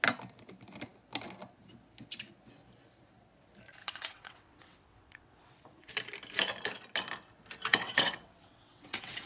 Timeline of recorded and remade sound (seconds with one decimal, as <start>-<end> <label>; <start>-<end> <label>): 0.0-3.8 recorded; 3.8-5.9 remade; 5.9-7.7 recorded; 7.7-9.3 remade